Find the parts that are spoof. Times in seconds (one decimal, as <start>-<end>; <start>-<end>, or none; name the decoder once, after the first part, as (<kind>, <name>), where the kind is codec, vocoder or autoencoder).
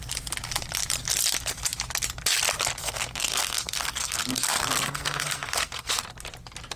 2.8-5.9 (codec, SNAC)